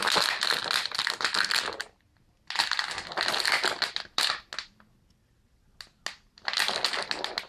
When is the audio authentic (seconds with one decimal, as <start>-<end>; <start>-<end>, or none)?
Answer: 0.0-7.5